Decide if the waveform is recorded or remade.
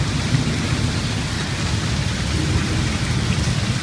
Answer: recorded